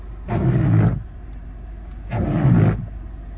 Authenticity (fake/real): real